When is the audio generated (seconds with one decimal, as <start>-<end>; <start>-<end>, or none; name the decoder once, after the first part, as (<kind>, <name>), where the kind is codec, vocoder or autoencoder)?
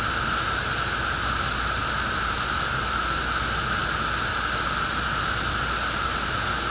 none